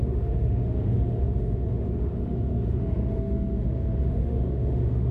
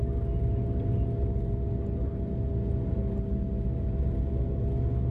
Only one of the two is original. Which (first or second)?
second